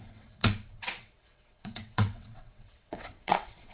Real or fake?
fake